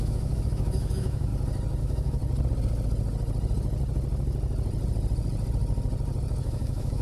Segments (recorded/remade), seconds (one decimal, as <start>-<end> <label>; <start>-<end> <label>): 0.0-1.3 remade; 1.3-1.8 recorded; 1.8-2.2 remade; 2.2-6.4 recorded; 6.4-7.0 remade